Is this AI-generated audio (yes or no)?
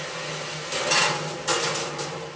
no